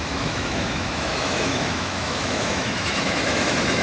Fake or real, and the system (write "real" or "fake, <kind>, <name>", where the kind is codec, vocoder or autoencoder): fake, autoencoder, DAC-VAE